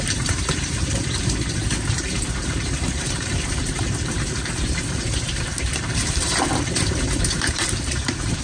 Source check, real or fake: fake